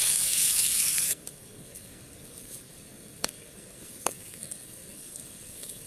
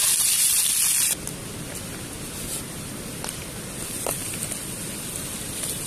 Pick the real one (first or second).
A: second